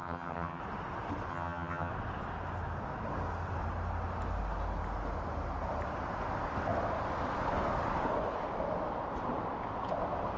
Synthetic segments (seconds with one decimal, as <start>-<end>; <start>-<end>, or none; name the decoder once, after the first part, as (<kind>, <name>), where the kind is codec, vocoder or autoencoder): 0.0-0.6 (vocoder, HiFi-GAN); 1.3-1.9